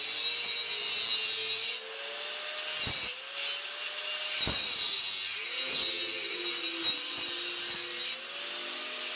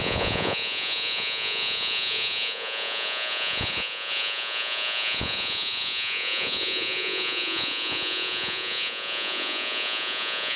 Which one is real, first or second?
first